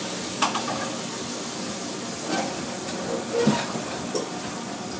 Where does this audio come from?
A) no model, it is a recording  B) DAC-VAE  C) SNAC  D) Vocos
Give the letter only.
A